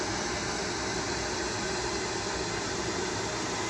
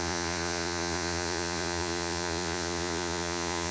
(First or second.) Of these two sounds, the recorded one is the first